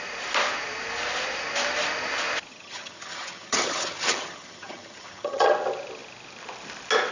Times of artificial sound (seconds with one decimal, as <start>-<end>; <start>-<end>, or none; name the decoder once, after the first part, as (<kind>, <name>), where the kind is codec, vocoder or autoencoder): 2.5-5.5 (vocoder, HiFi-GAN)